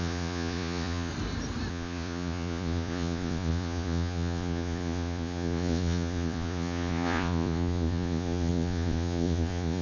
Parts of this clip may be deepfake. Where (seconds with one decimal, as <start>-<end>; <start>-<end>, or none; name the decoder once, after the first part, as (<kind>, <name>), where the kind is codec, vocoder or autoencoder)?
0.0-1.1 (vocoder, Vocos); 1.7-9.8